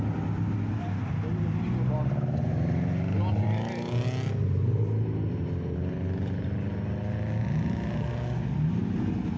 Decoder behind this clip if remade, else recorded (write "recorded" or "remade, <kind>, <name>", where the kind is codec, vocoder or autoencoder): recorded